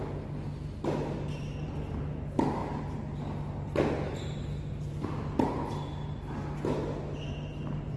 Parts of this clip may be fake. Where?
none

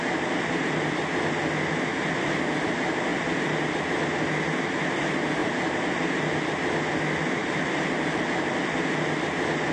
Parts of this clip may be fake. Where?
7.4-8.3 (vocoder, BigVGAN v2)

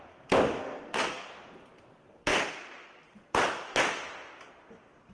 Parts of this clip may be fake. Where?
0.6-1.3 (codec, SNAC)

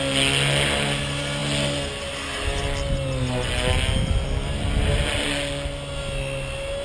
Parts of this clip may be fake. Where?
none